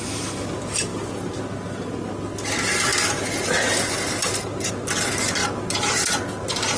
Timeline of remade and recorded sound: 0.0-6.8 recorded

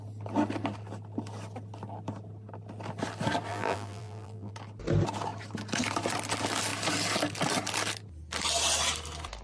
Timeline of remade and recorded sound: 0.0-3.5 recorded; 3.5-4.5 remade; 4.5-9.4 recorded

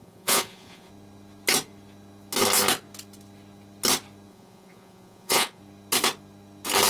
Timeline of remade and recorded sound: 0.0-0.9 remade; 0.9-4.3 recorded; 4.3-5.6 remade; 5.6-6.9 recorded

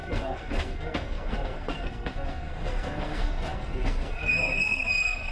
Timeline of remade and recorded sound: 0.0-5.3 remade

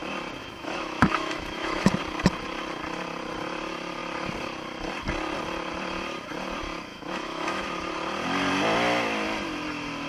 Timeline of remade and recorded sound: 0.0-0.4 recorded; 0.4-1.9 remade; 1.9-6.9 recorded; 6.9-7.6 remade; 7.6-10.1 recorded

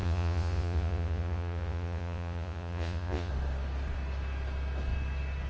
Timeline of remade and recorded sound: 0.0-3.3 remade; 3.3-5.5 recorded